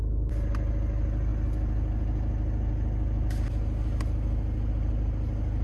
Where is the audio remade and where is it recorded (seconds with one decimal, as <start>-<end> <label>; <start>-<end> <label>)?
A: 0.0-5.6 recorded